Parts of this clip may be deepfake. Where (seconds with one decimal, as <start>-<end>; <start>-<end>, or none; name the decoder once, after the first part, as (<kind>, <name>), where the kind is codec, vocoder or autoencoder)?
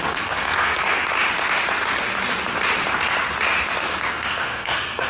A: 0.0-1.0 (codec, SNAC); 3.8-5.1